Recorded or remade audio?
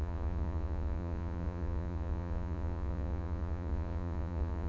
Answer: remade